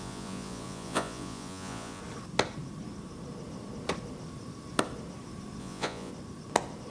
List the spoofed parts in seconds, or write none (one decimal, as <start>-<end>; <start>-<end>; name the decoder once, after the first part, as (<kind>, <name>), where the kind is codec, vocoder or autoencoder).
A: 0.0-2.0 (vocoder, Vocos); 5.6-6.1